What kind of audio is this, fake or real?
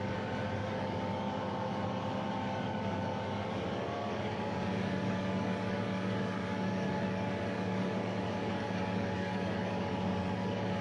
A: fake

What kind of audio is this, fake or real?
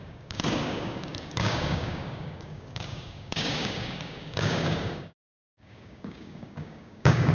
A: fake